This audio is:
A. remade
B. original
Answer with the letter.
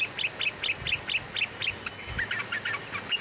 B